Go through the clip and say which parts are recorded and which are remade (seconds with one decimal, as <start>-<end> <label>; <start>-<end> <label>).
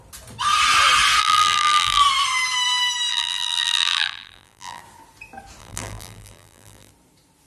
0.0-1.2 recorded; 1.2-2.0 remade; 2.0-3.1 recorded; 3.1-4.8 remade; 4.8-5.6 recorded; 5.6-6.9 remade; 6.9-7.5 recorded